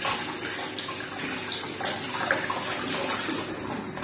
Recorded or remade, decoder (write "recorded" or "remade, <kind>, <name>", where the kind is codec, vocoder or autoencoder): recorded